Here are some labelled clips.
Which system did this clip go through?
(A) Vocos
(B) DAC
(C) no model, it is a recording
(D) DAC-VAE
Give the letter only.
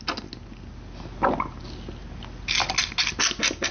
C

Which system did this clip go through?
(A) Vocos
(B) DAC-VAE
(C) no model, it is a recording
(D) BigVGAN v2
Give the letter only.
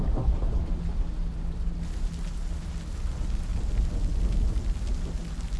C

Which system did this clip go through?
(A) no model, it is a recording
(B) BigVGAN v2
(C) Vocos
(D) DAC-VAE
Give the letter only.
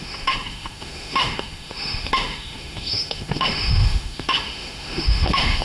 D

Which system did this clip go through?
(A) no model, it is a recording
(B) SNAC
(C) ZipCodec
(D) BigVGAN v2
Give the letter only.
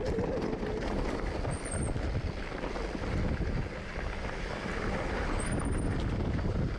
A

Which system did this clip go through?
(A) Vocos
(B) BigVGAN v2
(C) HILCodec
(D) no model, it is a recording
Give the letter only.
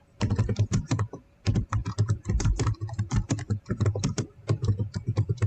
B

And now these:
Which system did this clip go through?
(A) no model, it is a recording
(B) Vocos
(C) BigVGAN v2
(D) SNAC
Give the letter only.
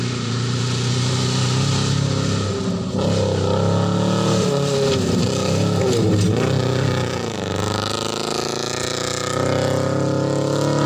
A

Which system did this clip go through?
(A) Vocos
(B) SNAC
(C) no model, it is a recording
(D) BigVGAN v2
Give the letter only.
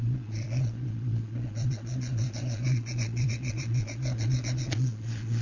A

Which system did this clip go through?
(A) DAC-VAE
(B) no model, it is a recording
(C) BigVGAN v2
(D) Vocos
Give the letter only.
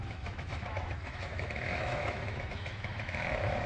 A